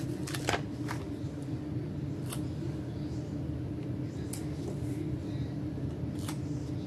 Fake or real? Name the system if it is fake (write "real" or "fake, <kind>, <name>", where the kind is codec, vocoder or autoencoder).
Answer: real